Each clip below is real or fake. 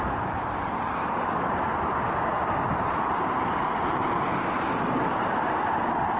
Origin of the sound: fake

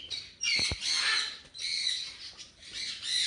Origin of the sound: real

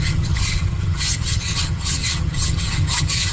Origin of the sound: fake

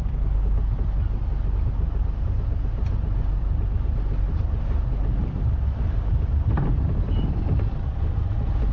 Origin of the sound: fake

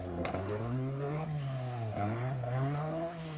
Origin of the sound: fake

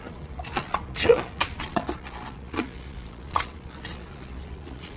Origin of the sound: fake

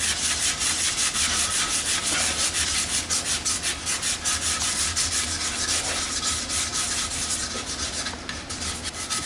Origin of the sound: real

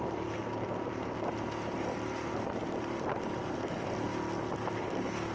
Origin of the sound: real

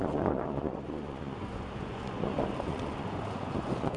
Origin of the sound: fake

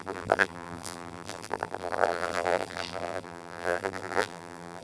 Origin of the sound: fake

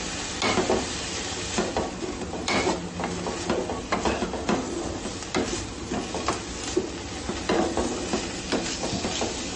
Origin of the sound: real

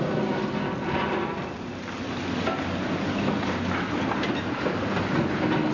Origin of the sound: real